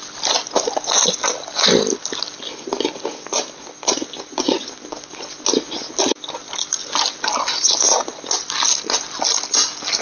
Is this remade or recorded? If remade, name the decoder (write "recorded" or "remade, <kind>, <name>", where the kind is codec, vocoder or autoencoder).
recorded